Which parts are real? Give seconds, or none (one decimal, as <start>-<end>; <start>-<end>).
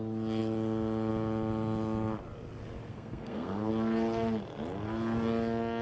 0.0-2.9; 3.7-5.8